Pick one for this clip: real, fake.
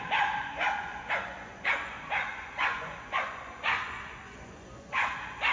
fake